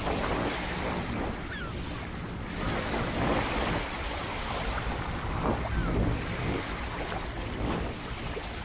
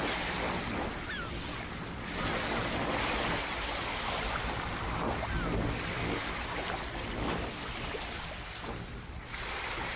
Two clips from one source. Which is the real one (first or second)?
second